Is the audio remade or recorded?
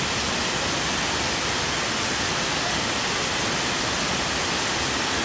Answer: recorded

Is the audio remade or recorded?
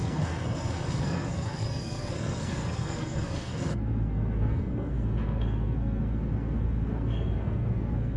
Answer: remade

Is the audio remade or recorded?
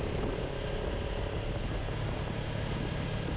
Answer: recorded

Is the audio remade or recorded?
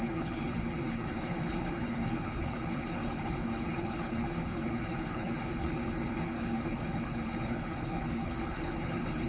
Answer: remade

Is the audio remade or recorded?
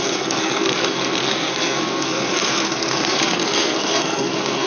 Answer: remade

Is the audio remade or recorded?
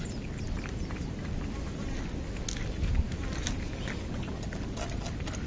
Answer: recorded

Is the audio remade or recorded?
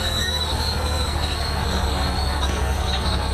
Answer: remade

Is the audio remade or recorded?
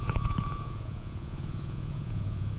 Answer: remade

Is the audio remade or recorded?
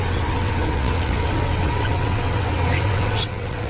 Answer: remade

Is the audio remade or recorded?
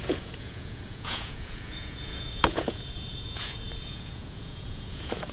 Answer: remade